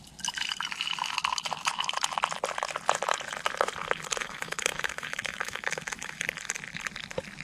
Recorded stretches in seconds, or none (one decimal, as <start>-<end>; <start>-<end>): 0.0-4.2; 6.2-7.4